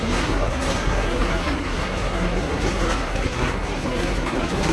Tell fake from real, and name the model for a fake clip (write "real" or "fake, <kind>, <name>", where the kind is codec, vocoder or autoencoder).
fake, codec, SNAC